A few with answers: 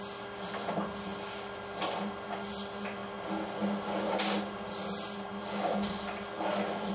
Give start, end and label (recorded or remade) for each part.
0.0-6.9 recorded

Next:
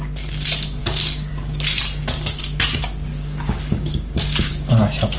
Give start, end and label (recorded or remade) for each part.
0.0-0.8 recorded; 0.8-1.3 remade; 1.3-3.1 recorded; 3.1-4.7 remade; 4.7-5.2 recorded

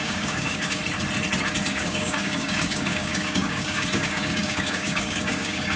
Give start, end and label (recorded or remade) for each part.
0.0-0.8 remade; 0.8-1.7 recorded; 1.7-5.8 remade

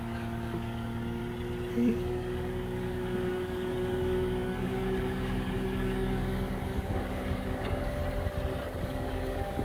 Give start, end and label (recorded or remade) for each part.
0.0-1.2 remade; 1.2-1.7 recorded; 1.7-8.0 remade; 8.0-8.8 recorded; 8.8-9.6 remade